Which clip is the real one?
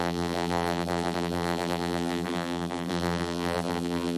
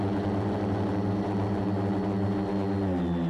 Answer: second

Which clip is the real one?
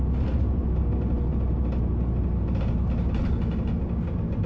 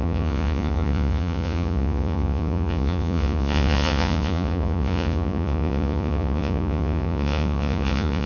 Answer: first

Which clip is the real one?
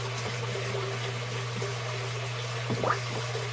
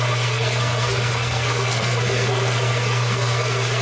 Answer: first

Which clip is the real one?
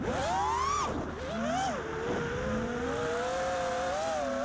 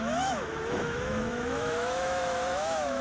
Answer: first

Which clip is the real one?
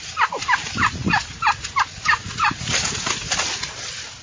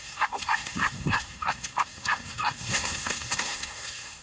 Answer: first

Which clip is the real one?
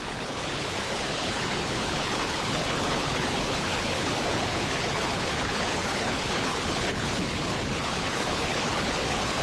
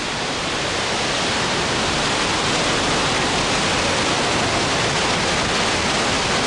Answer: second